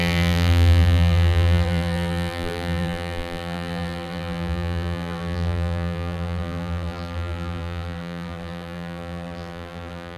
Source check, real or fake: fake